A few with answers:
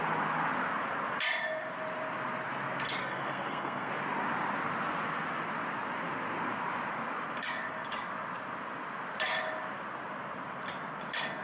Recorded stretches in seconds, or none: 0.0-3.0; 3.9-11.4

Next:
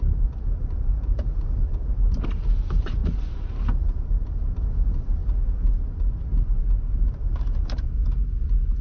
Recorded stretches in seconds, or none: 5.2-7.1; 8.0-8.8